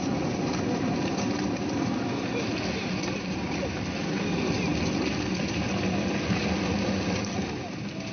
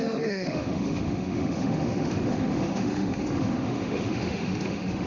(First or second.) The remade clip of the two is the second